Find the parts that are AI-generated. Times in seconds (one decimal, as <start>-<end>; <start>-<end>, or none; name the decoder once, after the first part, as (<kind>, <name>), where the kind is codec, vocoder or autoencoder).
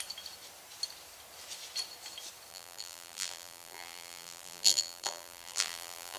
2.5-6.2 (vocoder, BigVGAN v2)